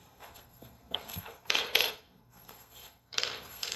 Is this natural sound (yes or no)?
no